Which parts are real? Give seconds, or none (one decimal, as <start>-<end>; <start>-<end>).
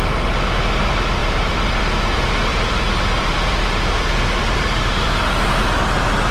0.0-1.2; 1.8-2.5; 5.6-6.3